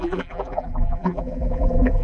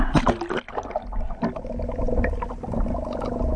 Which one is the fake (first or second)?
first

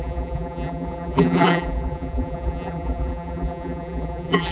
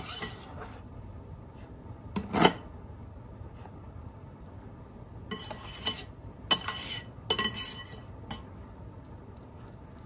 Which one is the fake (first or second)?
first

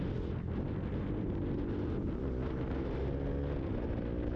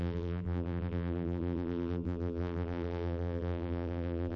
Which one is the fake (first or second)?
second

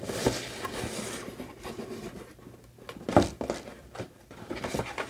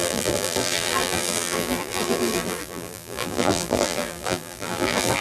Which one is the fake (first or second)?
second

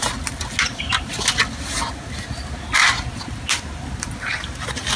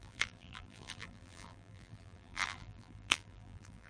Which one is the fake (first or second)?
second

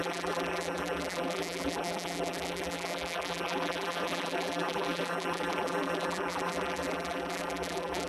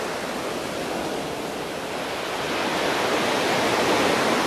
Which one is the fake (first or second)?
first